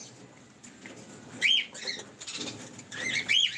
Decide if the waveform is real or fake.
real